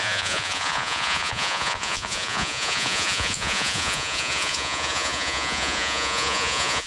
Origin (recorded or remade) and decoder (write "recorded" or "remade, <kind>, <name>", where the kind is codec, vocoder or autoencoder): remade, vocoder, Vocos